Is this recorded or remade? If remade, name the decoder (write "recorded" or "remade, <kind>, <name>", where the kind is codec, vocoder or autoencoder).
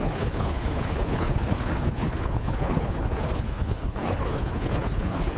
remade, codec, HILCodec